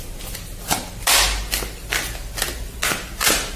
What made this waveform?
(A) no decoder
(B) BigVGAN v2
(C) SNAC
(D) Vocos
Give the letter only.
A